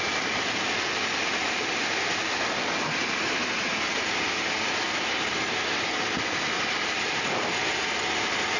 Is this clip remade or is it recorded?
recorded